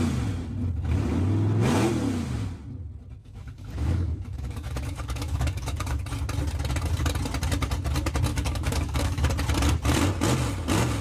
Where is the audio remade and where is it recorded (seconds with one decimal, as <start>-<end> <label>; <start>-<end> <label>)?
0.0-3.2 recorded; 3.2-6.0 remade; 6.0-8.3 recorded; 8.3-9.3 remade; 9.3-11.0 recorded